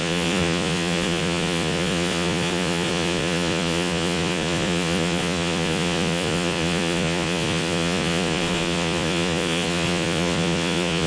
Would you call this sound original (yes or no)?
no